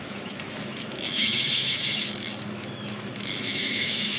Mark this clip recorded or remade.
remade